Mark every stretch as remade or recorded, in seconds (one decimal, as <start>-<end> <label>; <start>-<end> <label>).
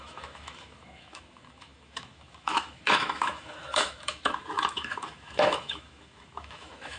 0.0-7.0 remade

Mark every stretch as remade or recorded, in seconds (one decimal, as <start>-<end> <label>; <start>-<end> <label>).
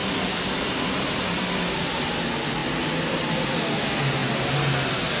0.0-5.2 recorded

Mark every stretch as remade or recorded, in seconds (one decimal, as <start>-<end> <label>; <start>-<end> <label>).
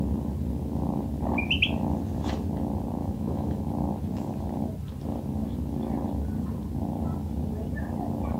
0.0-3.0 recorded; 3.0-3.6 remade; 3.6-8.4 recorded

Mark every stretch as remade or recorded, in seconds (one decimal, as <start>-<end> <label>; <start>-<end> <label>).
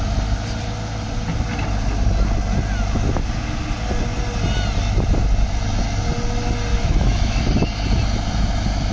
0.0-6.7 recorded; 6.7-7.4 remade; 7.4-8.9 recorded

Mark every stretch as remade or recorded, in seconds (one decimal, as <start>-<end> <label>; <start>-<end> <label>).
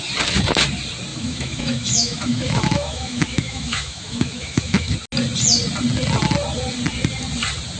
0.0-1.1 recorded; 1.1-4.9 remade; 4.9-7.8 recorded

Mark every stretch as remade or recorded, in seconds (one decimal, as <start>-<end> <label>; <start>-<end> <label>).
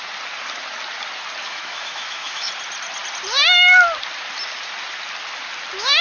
0.0-1.4 recorded; 1.4-2.5 remade; 2.5-6.0 recorded